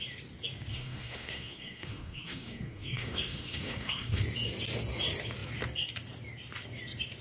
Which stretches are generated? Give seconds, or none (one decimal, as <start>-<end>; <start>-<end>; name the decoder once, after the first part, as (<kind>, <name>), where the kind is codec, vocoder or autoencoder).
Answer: 0.7-4.2 (codec, SNAC)